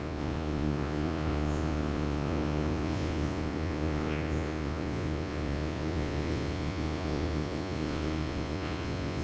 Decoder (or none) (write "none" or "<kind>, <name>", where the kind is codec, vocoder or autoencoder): vocoder, Vocos